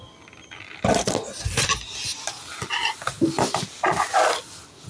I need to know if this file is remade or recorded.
recorded